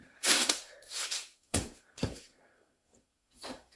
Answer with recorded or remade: remade